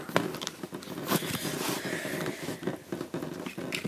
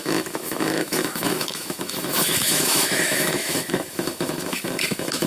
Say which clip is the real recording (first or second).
first